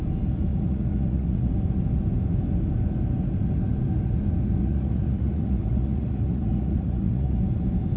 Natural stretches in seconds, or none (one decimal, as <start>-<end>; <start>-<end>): 0.0-0.5; 1.5-4.6; 7.4-8.0